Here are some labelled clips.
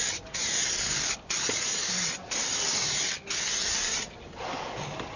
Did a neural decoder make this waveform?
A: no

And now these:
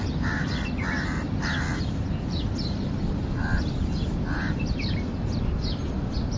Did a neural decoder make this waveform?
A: no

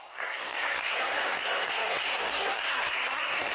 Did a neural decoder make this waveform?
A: yes